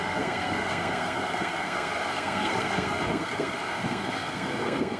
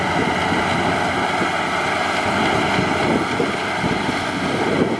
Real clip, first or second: second